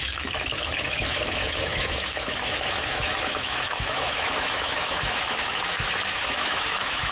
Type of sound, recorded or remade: remade